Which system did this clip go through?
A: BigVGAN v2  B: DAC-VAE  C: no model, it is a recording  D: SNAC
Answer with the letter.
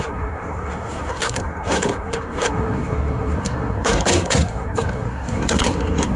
D